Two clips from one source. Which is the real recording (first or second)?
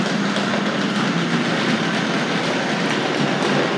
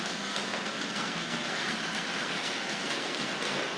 first